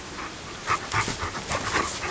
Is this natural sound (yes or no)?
yes